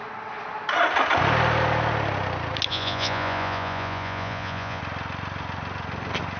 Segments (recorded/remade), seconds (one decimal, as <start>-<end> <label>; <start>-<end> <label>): 0.0-2.7 recorded; 2.7-4.8 remade; 4.8-6.4 recorded